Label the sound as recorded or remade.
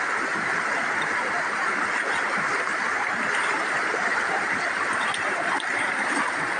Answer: remade